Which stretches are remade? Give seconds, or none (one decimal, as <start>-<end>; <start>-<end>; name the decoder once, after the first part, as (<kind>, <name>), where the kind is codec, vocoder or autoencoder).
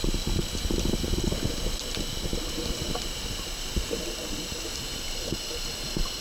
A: 0.0-1.5 (vocoder, BigVGAN v2)